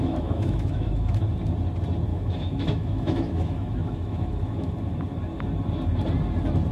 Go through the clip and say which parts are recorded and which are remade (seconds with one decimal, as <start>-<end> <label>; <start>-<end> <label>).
0.0-1.2 remade; 1.2-2.1 recorded; 2.1-4.7 remade; 4.7-6.7 recorded